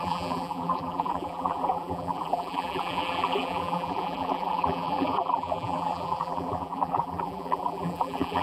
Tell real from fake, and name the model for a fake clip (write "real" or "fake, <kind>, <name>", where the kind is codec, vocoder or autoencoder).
fake, vocoder, BigVGAN v2